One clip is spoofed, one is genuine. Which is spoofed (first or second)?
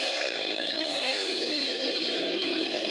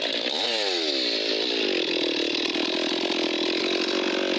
first